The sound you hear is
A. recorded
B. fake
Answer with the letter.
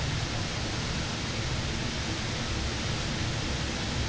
A